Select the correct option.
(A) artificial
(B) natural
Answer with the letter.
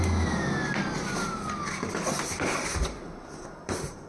B